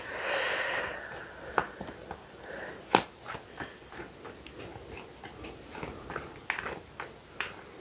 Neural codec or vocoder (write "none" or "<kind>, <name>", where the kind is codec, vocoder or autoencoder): none